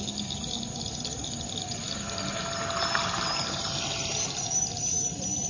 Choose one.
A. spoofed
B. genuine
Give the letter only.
B